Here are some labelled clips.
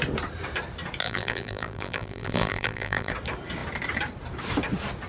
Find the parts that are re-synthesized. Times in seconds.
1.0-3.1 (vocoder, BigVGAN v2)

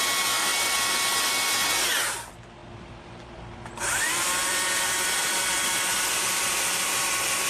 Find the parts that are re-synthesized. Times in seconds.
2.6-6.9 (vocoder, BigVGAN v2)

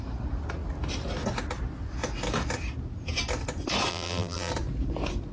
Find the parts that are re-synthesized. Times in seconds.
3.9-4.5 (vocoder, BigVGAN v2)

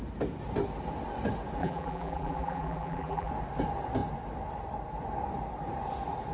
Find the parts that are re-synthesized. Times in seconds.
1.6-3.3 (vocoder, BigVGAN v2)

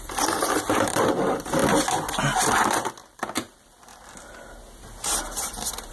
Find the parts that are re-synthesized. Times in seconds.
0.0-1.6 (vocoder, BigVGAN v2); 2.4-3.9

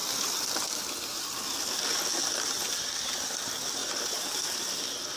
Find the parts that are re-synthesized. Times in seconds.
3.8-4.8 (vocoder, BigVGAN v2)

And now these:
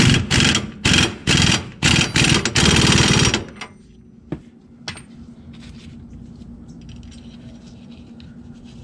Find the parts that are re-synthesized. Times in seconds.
1.2-1.9 (vocoder, BigVGAN v2)